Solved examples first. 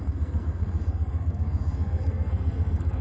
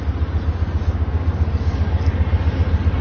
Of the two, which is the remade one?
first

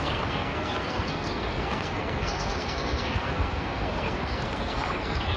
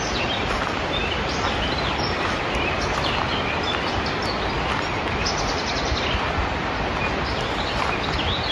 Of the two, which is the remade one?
first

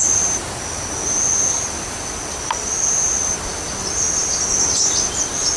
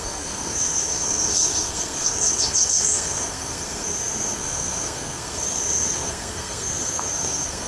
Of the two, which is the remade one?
second